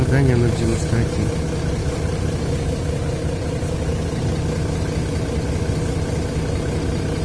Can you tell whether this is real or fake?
real